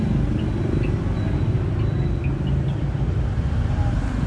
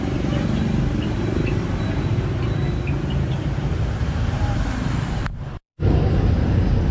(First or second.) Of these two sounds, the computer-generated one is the second